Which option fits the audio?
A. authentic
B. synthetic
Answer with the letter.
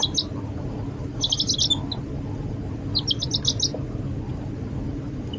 A